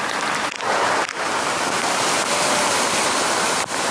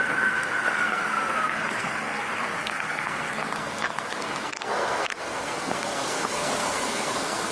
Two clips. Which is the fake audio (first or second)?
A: second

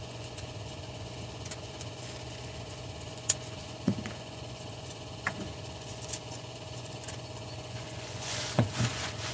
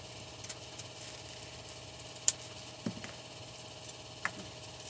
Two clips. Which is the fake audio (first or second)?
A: first